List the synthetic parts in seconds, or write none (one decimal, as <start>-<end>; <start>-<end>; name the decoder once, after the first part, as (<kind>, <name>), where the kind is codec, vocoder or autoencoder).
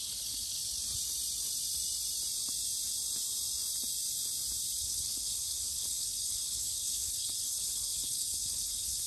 0.0-0.6 (codec, HILCodec); 4.8-9.1